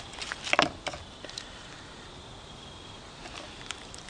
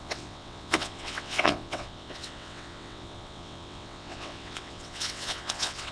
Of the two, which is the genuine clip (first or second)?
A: first